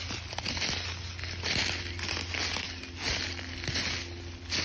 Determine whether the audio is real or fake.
real